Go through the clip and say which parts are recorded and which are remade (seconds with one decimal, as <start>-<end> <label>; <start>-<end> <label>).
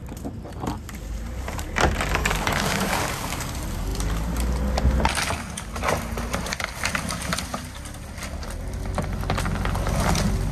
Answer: 0.0-2.2 recorded; 2.2-3.5 remade; 3.5-10.5 recorded